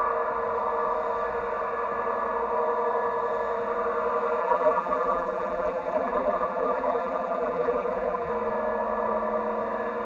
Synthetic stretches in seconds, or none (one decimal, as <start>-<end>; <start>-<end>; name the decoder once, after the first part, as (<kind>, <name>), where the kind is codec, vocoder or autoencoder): 4.4-8.3 (vocoder, BigVGAN v2)